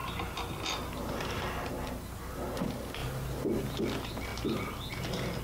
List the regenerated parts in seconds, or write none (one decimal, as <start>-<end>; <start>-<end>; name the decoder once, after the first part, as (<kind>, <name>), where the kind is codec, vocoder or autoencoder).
none